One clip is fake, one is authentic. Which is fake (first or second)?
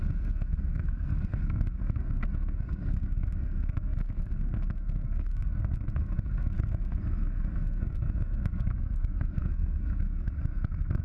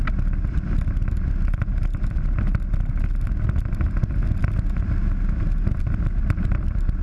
first